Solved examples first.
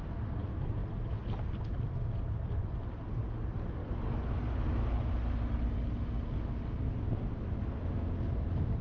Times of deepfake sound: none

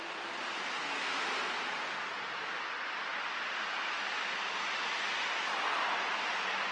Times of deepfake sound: none

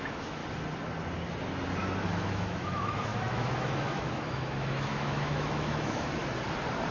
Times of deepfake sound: 0.0-0.4 (autoencoder, DAC-VAE); 2.0-6.2